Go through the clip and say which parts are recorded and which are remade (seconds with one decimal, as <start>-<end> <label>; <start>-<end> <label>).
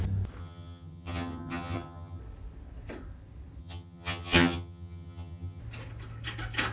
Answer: 0.0-0.4 recorded; 0.4-2.2 remade; 2.2-3.6 recorded; 3.6-5.6 remade; 5.6-6.7 recorded